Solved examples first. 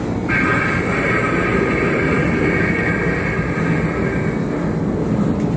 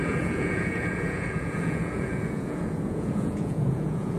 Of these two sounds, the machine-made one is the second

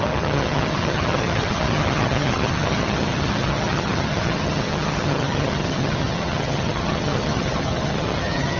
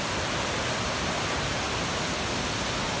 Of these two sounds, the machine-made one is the first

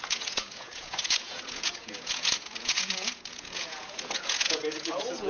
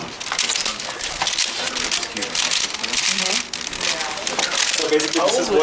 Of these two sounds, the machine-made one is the first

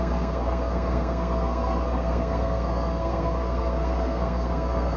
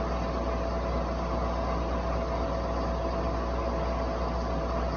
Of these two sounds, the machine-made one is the first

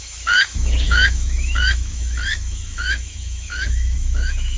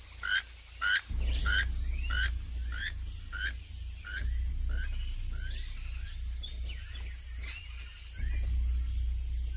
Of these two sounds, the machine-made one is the first